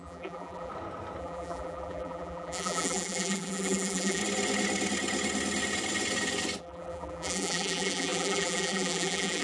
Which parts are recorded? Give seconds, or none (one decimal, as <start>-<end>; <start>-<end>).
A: 0.7-1.2; 4.2-6.6